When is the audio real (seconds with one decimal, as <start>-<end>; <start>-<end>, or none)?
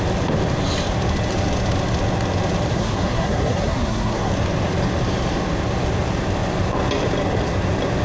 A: 0.0-2.7; 4.3-8.0